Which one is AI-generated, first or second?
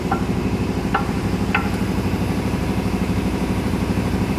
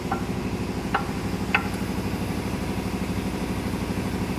first